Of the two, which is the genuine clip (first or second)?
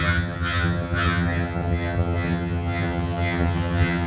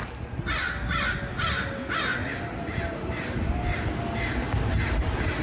second